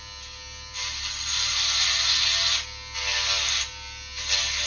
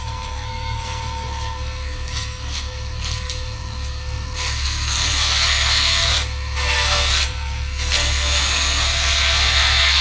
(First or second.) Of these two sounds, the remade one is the second